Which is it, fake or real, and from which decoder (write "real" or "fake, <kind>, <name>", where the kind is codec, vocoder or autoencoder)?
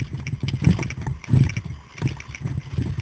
real